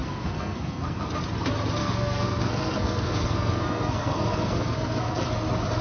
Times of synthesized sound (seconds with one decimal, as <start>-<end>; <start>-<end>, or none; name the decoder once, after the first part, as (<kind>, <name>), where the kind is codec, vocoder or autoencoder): 0.0-1.1 (codec, SNAC); 1.8-5.3